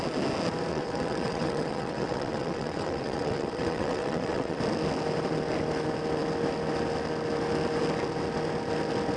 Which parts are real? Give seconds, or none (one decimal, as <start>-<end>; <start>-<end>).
0.0-0.7; 4.6-9.2